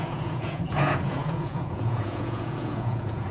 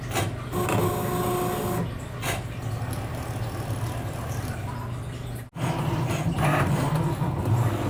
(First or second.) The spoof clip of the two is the first